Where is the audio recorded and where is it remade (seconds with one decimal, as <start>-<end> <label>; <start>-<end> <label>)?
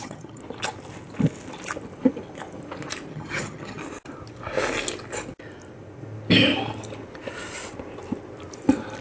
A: 0.0-0.4 remade; 0.4-3.1 recorded; 3.1-3.8 remade; 3.8-9.0 recorded